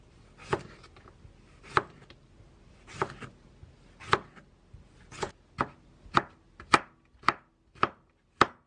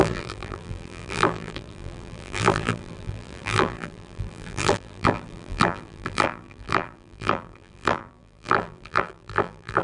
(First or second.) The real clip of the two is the first